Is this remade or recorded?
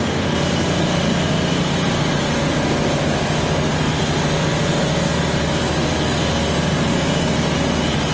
recorded